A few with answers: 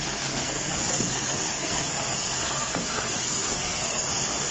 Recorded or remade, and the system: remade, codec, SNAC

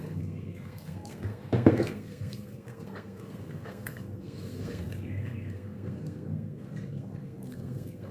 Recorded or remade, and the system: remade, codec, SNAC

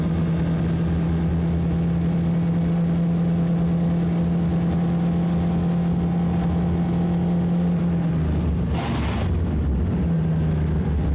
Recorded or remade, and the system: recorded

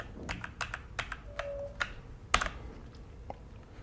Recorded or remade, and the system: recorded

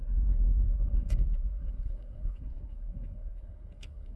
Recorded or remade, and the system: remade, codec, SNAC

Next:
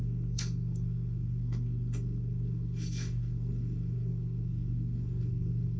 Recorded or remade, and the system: remade, codec, SNAC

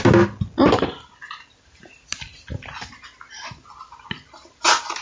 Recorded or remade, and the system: recorded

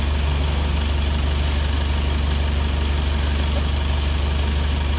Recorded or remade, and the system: recorded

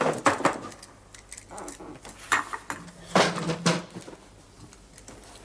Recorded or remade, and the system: recorded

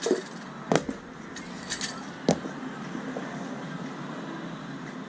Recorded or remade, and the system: recorded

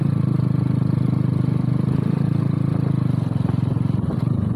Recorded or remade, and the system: recorded